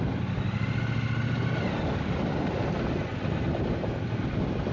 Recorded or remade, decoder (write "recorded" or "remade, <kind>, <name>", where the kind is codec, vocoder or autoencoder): recorded